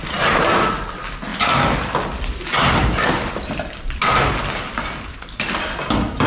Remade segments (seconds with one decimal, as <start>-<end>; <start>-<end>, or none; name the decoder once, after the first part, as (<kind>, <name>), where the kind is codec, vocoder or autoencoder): none